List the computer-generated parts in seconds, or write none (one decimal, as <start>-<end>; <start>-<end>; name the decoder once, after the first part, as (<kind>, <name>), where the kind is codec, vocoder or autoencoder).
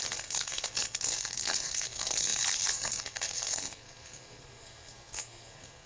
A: 0.0-5.9 (codec, SNAC)